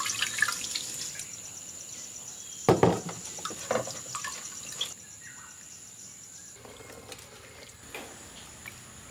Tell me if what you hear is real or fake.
real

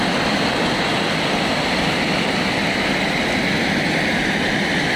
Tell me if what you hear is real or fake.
real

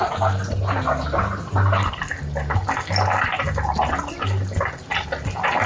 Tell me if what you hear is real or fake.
real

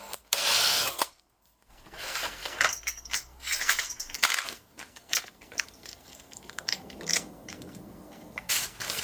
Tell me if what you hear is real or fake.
fake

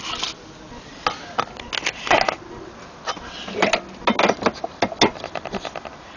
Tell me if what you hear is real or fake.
real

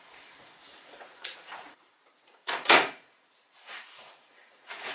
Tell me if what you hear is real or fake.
fake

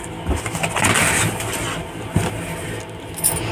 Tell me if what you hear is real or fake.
real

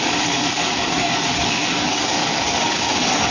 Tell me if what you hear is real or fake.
fake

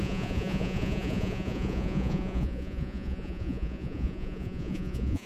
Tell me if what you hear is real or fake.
fake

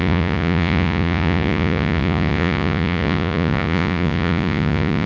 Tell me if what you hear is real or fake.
fake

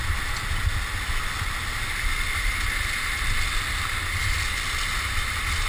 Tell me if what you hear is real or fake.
real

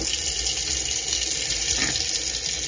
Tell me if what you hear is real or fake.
real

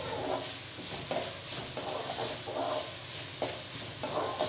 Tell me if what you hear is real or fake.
real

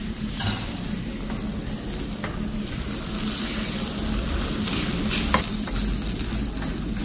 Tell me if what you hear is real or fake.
real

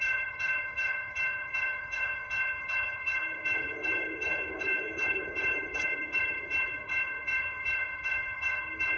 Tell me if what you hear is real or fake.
fake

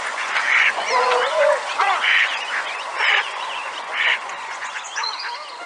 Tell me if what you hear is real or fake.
fake